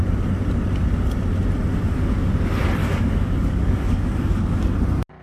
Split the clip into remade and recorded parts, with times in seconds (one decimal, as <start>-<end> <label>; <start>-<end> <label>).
0.0-1.7 recorded; 1.7-2.3 remade; 2.3-2.8 recorded; 2.8-4.6 remade; 4.6-5.2 recorded